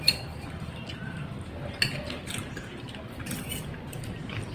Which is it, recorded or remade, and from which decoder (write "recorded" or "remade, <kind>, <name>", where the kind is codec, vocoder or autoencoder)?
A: remade, vocoder, BigVGAN v2